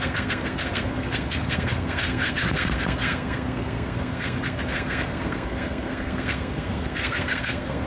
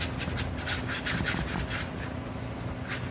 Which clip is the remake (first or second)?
first